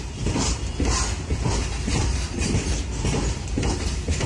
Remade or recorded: recorded